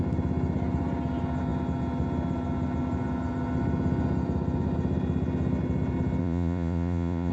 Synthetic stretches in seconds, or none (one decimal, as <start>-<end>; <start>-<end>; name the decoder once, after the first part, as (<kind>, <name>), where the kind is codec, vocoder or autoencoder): 6.2-7.3 (vocoder, Vocos)